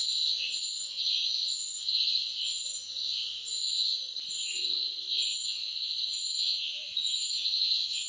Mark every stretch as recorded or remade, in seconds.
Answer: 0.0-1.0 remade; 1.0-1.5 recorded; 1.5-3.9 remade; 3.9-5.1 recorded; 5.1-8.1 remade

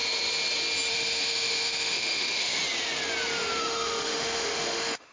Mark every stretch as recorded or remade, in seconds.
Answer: 0.0-0.9 recorded; 0.9-2.6 remade; 2.6-3.6 recorded; 3.6-5.1 remade

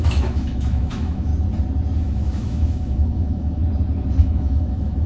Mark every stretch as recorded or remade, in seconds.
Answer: 0.0-1.3 remade; 1.3-2.0 recorded; 2.0-3.6 remade; 3.6-4.2 recorded; 4.2-5.1 remade